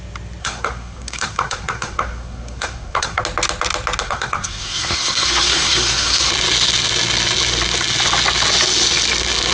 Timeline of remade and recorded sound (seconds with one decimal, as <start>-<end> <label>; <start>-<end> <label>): 0.0-0.4 recorded; 0.4-3.2 remade; 3.2-4.0 recorded; 4.0-6.3 remade; 6.3-9.5 recorded